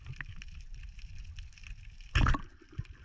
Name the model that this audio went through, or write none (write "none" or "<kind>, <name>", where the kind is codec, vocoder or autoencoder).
none